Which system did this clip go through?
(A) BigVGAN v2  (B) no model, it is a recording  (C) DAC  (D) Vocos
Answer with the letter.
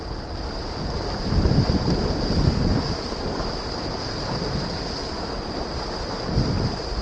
B